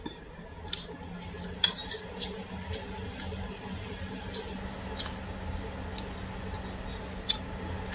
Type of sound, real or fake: real